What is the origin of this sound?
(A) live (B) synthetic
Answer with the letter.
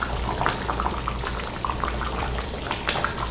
B